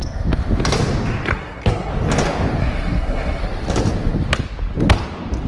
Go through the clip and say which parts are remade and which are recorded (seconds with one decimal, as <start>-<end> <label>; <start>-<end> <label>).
0.0-1.3 recorded; 1.3-1.9 remade; 1.9-2.6 recorded; 2.6-3.4 remade; 3.4-5.5 recorded